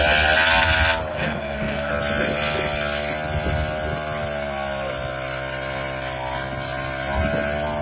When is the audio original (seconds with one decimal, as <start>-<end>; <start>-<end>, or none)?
0.0-1.1; 1.9-7.8